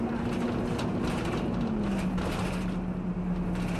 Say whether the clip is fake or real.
real